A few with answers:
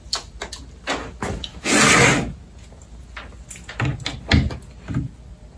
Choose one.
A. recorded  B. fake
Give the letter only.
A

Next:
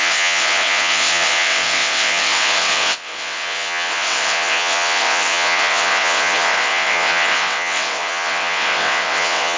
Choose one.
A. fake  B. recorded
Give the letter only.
A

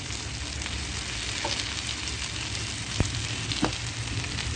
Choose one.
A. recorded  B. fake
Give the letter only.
A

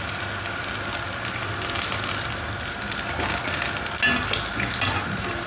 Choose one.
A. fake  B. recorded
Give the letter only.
B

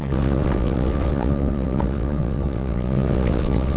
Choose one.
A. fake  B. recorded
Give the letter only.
A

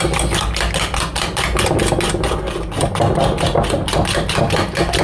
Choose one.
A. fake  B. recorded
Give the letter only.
B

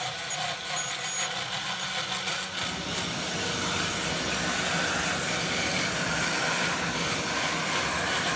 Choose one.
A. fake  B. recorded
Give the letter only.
B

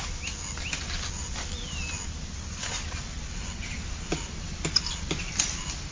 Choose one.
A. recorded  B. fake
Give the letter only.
A